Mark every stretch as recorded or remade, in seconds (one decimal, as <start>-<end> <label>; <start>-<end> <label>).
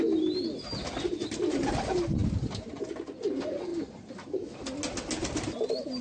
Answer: 0.0-3.7 recorded; 3.7-4.3 remade; 4.3-5.2 recorded; 5.2-6.0 remade